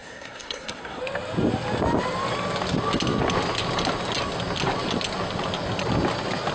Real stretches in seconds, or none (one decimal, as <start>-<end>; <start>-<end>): 1.0-6.5